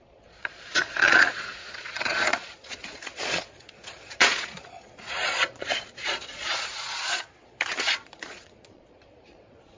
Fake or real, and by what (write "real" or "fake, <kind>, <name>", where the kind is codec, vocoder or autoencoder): fake, vocoder, Vocos